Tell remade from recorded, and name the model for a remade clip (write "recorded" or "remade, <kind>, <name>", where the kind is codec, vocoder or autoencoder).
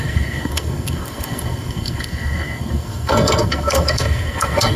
remade, codec, SNAC